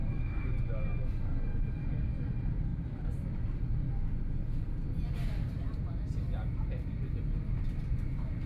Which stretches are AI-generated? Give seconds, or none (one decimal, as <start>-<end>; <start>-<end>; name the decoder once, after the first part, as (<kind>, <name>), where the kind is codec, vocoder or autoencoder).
0.0-0.6 (vocoder, BigVGAN v2); 2.7-3.9; 4.8-5.7